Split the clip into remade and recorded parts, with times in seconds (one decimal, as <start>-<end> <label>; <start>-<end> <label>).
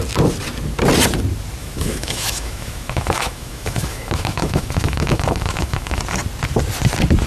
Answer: 0.0-1.6 recorded; 1.6-6.0 remade; 6.0-7.3 recorded